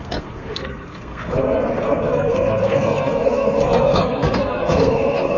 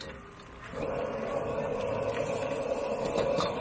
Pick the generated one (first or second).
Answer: first